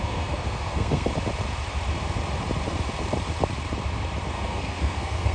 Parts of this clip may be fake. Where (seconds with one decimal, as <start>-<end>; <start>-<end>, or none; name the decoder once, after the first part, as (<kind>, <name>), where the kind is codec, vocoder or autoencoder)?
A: 0.0-1.1 (codec, SNAC); 4.3-5.3